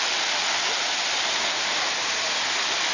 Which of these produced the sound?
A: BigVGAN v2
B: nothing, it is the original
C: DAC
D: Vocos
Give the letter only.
B